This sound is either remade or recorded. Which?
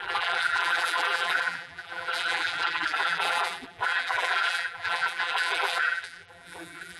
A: remade